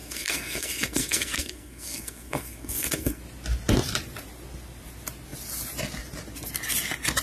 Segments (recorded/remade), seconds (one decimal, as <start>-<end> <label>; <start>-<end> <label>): 0.0-3.2 remade; 3.2-7.2 recorded